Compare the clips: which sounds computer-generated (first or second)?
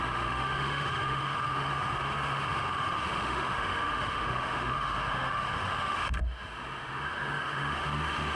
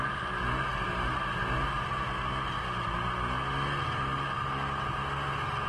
first